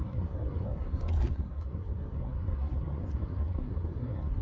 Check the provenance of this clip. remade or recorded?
remade